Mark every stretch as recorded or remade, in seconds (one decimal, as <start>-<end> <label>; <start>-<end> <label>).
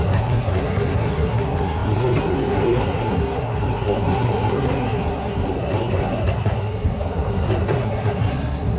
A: 0.0-8.8 remade